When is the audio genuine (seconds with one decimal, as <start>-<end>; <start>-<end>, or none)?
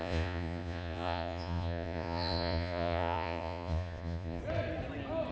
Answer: 4.4-5.3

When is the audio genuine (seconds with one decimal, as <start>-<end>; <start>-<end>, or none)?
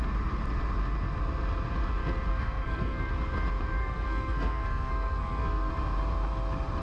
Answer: 0.0-2.3; 3.1-3.8; 5.7-6.8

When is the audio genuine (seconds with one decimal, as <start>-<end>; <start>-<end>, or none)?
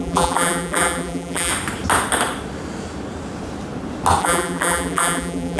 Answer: 1.5-4.2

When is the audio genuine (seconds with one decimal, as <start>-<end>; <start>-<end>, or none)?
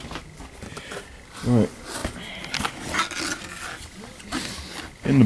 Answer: 0.0-5.3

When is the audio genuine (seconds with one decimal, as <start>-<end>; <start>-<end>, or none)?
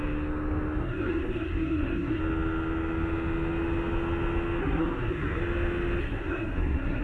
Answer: 0.0-0.8; 2.2-4.6; 5.4-6.0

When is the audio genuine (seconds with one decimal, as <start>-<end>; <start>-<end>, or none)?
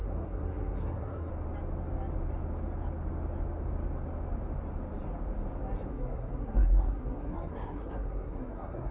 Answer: 1.3-5.9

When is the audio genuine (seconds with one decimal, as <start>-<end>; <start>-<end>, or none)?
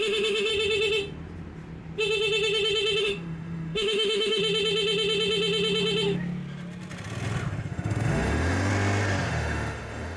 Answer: 0.5-3.0; 4.4-7.7; 8.7-9.3